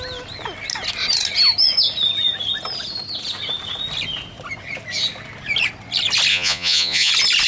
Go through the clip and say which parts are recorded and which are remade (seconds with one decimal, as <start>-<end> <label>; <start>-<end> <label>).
0.0-6.3 recorded; 6.3-7.1 remade; 7.1-7.5 recorded